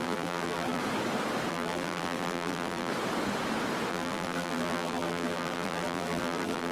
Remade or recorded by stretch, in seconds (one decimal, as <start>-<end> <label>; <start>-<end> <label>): 0.0-0.8 remade; 0.8-1.5 recorded; 1.5-2.9 remade; 2.9-3.9 recorded; 3.9-6.7 remade